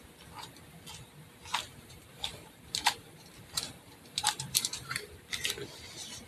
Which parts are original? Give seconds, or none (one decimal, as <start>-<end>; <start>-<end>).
0.0-1.7; 5.1-6.3

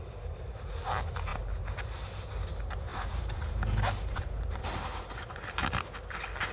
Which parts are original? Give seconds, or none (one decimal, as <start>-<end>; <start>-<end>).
0.0-2.9; 5.4-6.5

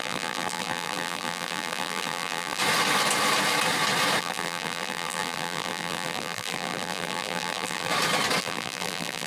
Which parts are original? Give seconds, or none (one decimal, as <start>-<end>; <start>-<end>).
2.6-4.2; 7.9-8.4

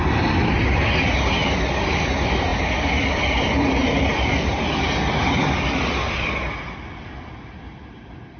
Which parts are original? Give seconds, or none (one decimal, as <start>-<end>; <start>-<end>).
0.0-2.5; 7.3-8.4

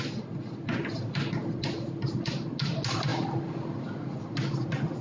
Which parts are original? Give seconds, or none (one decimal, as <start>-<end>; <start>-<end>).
0.0-5.0

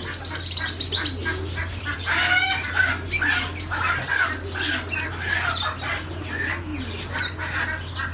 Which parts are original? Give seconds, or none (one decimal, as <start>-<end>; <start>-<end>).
0.0-1.6; 2.9-8.1